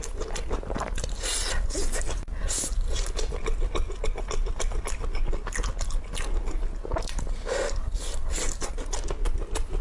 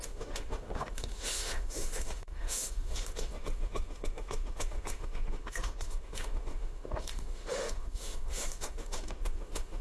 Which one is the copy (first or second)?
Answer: second